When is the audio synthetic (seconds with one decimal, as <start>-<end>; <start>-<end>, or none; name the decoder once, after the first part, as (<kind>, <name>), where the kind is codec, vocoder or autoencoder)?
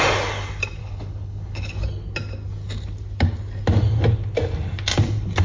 0.8-1.7 (codec, HILCodec)